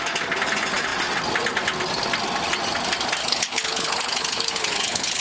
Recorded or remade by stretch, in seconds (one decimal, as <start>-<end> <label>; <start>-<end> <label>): 0.0-3.2 recorded; 3.2-5.2 remade